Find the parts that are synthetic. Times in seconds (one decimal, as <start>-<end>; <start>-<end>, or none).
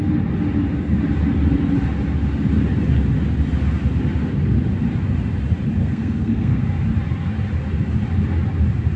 5.8-6.6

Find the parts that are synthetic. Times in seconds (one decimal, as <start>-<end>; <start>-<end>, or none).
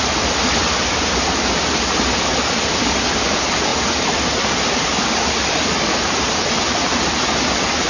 none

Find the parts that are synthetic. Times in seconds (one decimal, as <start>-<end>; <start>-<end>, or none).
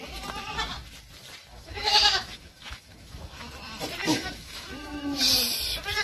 1.5-3.5; 4.1-5.2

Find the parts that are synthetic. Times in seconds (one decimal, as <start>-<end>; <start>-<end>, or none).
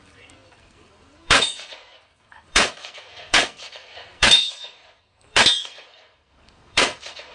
0.0-7.3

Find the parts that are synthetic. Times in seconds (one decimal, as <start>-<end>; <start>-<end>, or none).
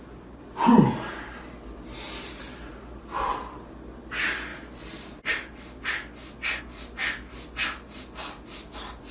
none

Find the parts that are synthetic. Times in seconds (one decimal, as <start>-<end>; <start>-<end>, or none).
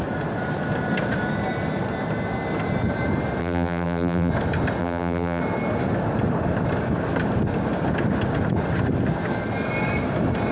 3.4-4.3; 4.8-5.4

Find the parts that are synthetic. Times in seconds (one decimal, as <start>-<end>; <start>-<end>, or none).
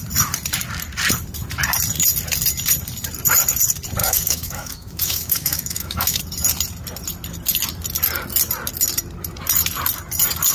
4.0-6.2